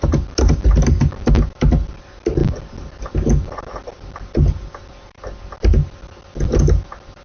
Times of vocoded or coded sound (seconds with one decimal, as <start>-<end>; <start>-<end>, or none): none